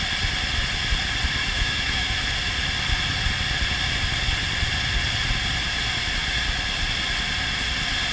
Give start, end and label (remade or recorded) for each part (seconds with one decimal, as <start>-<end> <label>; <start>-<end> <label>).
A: 0.0-1.4 recorded; 1.4-2.2 remade; 2.2-8.1 recorded